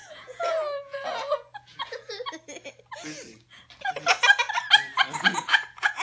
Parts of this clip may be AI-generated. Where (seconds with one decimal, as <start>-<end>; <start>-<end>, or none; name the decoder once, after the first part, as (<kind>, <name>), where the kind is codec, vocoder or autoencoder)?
0.0-2.2 (vocoder, Vocos); 5.2-6.0